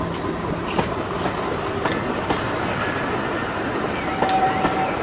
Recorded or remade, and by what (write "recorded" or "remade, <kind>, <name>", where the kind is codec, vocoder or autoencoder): recorded